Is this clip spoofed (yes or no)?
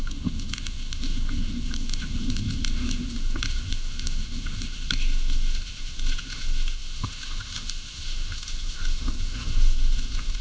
yes